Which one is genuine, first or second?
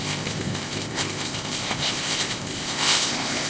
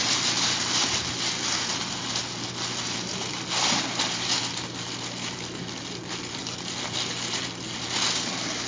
second